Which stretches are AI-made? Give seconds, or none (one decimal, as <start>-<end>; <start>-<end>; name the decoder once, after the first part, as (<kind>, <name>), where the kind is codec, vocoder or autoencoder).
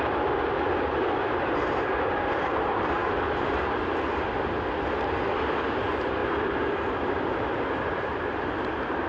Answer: 0.0-3.0 (vocoder, BigVGAN v2); 4.7-6.2; 7.1-9.1